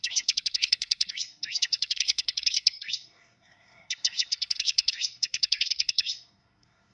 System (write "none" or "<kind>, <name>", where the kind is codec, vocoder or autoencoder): codec, SNAC